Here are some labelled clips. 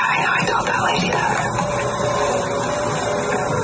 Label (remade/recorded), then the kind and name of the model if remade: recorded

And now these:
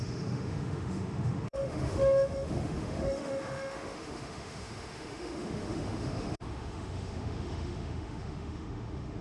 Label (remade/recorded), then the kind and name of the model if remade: remade, autoencoder, DAC-VAE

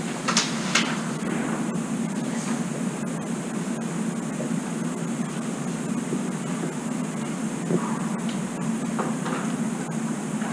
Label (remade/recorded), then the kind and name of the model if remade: recorded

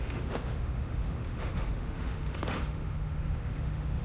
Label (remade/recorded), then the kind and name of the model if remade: remade, autoencoder, DAC-VAE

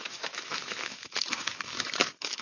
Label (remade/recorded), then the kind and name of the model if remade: remade, autoencoder, DAC-VAE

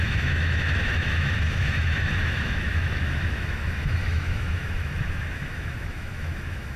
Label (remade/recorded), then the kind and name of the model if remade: remade, autoencoder, DAC-VAE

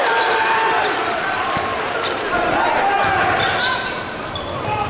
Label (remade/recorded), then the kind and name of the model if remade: recorded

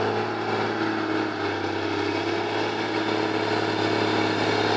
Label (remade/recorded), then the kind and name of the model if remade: recorded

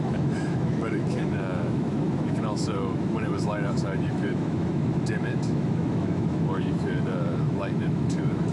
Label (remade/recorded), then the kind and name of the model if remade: remade, autoencoder, DAC-VAE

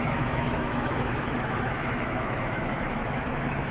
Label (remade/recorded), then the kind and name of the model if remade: remade, autoencoder, DAC-VAE